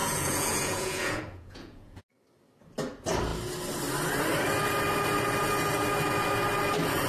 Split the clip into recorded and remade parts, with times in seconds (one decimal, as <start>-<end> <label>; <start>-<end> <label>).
0.0-2.0 remade; 2.0-7.1 recorded